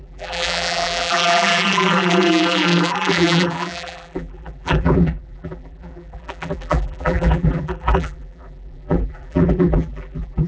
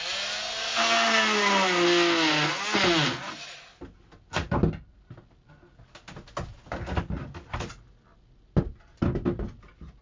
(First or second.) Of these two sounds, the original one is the second